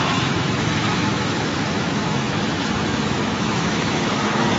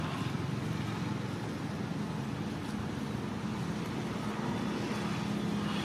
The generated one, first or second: first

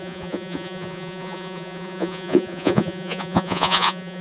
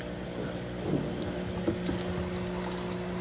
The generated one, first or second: first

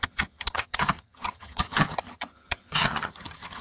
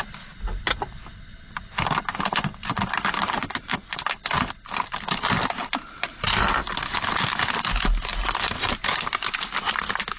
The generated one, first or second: first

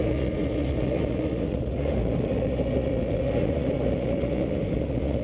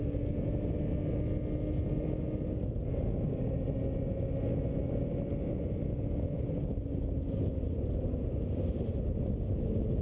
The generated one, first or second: first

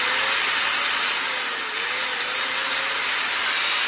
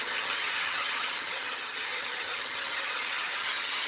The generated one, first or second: second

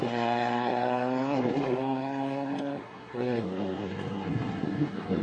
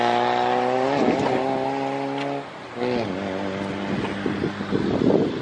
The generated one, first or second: first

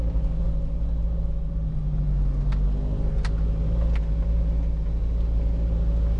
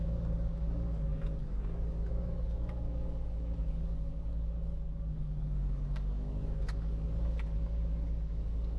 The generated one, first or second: second